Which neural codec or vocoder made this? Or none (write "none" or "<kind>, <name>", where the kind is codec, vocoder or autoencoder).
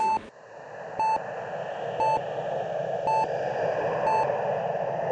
none